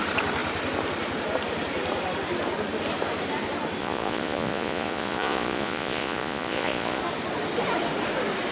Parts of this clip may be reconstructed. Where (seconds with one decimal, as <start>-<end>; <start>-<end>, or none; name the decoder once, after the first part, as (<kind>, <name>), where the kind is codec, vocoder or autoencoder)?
3.8-7.0 (vocoder, Vocos)